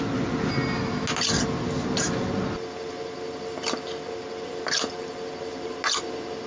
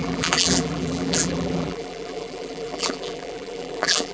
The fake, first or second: second